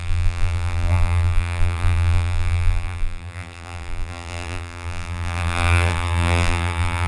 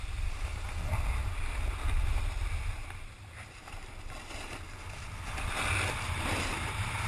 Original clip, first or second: second